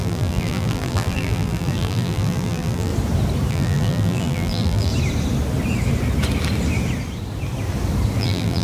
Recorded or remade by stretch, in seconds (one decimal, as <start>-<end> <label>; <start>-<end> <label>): 0.0-2.9 remade; 2.9-3.5 recorded; 3.5-4.9 remade; 4.9-8.2 recorded; 8.2-8.6 remade